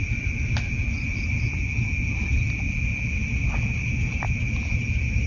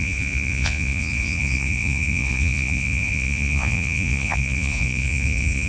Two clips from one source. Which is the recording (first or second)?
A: first